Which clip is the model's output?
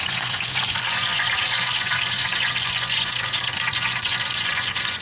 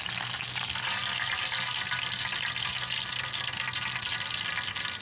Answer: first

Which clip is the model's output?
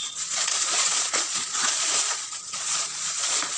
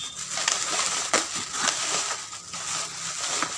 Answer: first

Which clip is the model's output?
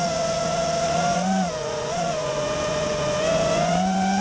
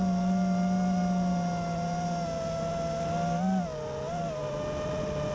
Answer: first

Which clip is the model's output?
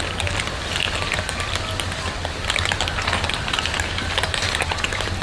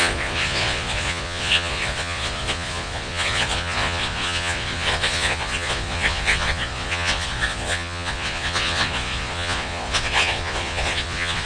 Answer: second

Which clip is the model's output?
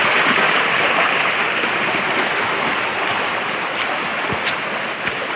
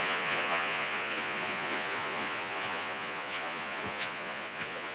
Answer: second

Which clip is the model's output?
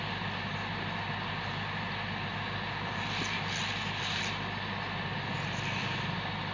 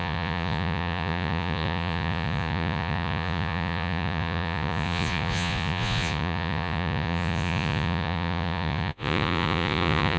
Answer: second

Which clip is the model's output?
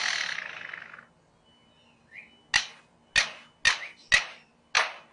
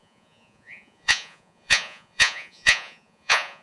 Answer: second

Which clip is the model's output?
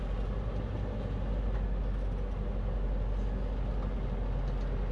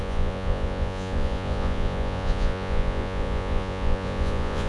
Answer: second